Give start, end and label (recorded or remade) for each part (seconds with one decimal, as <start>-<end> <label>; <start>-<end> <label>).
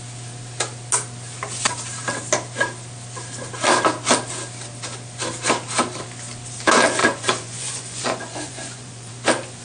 0.0-7.0 recorded; 7.0-9.1 remade; 9.1-9.6 recorded